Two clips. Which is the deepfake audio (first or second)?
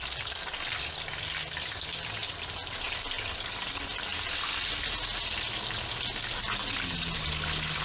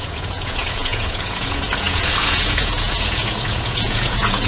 second